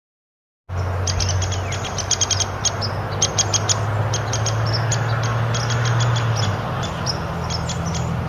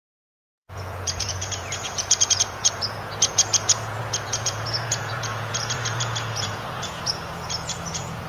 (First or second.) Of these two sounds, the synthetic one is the second